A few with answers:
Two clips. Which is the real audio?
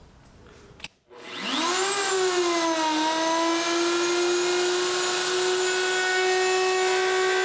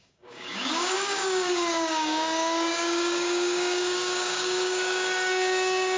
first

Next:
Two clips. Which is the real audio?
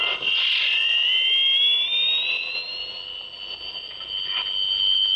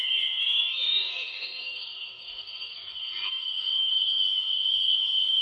first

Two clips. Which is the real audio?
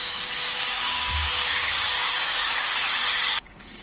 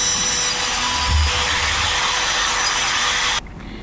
second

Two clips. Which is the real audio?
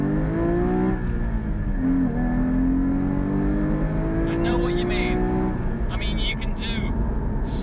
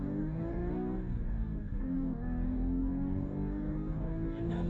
first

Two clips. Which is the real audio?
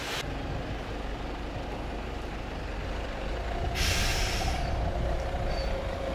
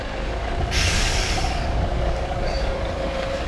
first